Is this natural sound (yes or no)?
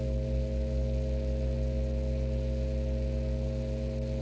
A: yes